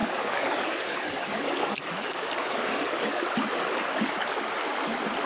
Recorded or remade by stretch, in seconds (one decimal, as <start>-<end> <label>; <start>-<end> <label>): 0.0-3.2 remade; 3.2-5.3 recorded